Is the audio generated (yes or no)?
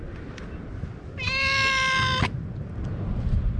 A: no